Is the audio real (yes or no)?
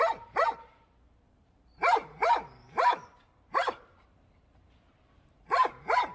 no